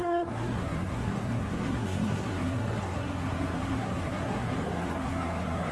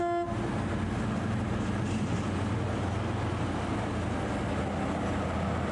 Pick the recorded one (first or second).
second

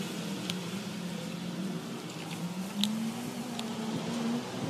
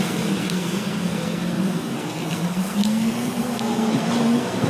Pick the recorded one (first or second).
first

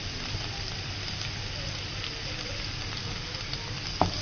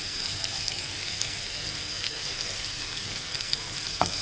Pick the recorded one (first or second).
first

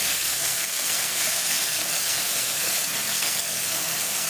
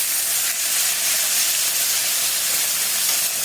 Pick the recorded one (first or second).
second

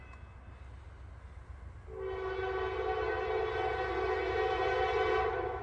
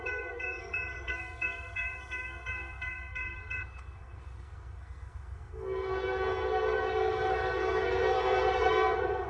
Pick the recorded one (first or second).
first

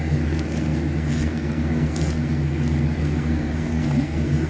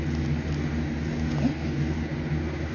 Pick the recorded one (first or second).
second